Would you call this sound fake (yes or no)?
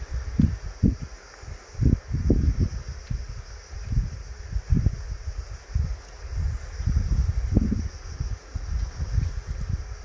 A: no